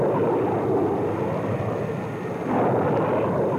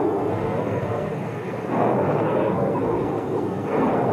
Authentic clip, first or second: first